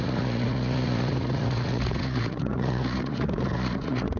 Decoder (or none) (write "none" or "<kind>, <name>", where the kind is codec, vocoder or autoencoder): vocoder, Vocos